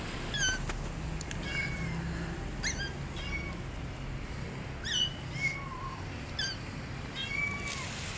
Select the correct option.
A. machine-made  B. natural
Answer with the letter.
B